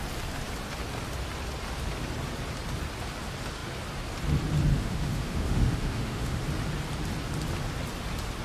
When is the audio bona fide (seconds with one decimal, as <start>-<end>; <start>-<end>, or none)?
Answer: 0.0-4.7; 6.4-8.4